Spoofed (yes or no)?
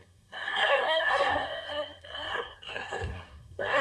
yes